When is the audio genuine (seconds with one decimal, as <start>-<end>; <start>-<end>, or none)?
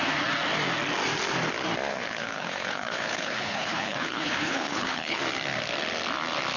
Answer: 0.0-1.9; 5.2-6.6